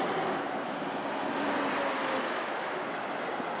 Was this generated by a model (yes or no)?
no